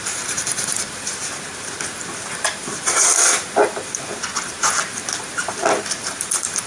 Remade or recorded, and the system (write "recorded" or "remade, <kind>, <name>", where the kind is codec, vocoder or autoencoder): remade, vocoder, BigVGAN v2